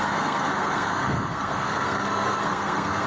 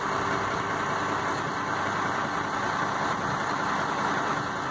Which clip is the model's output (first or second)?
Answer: first